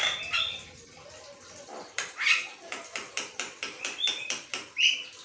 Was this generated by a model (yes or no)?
no